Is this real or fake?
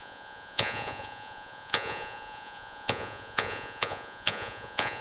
fake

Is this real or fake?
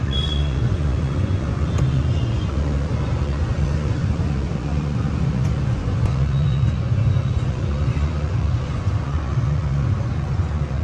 fake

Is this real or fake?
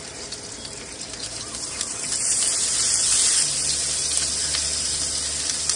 real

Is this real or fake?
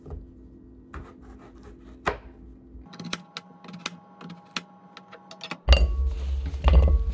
real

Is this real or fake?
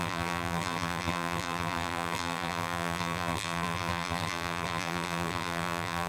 fake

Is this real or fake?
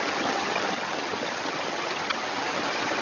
fake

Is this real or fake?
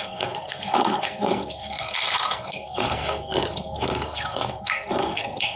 fake